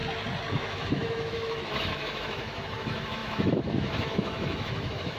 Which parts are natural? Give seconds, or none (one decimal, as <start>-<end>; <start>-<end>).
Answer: 0.0-0.5